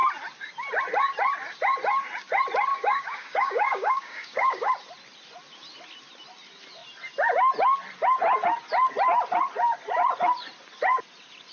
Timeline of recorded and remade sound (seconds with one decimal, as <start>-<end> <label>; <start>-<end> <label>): 0.0-2.7 recorded; 2.7-4.7 remade; 4.7-11.5 recorded